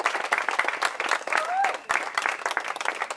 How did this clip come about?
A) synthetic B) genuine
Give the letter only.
B